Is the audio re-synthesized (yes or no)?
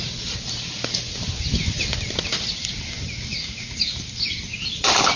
no